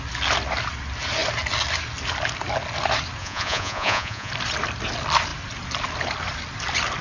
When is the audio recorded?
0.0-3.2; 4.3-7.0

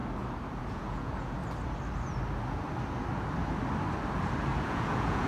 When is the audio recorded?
0.0-0.6; 1.4-4.6

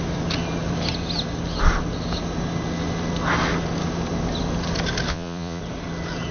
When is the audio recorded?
0.0-5.1; 5.6-6.3

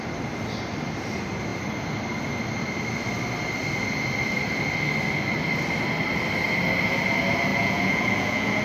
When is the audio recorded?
0.0-7.5

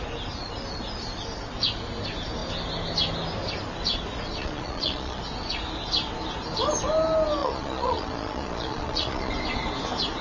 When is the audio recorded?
0.0-4.4; 5.2-7.4; 9.3-10.2

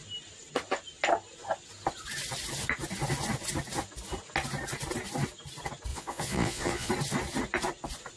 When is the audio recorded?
0.0-5.9; 6.9-8.2